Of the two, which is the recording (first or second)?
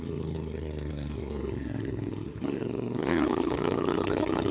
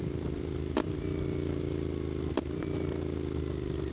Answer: second